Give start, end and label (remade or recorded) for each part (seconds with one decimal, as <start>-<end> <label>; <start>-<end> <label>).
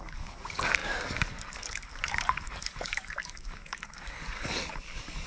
0.0-5.3 remade